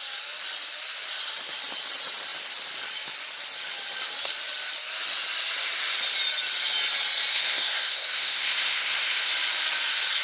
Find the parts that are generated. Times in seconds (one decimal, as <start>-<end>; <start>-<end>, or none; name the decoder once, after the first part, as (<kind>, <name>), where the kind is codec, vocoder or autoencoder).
7.3-9.3 (codec, SNAC)